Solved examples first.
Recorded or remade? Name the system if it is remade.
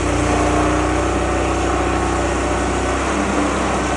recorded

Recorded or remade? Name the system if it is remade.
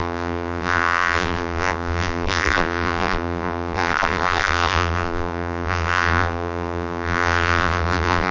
remade, vocoder, BigVGAN v2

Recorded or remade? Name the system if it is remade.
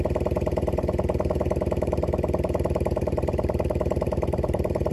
remade, vocoder, BigVGAN v2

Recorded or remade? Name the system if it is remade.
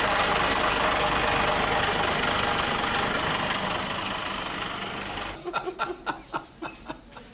recorded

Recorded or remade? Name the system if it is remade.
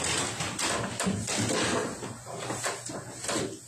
recorded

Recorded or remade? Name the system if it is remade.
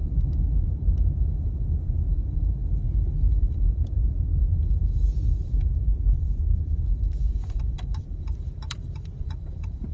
remade, vocoder, BigVGAN v2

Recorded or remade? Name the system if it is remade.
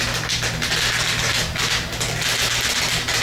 recorded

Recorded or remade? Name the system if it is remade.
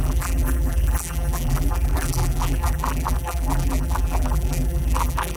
remade, vocoder, BigVGAN v2